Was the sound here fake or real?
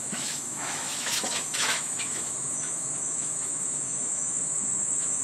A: fake